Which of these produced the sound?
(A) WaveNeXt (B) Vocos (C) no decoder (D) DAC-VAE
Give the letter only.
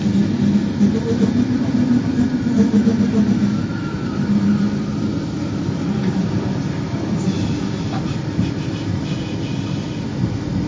C